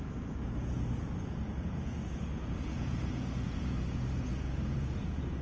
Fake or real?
fake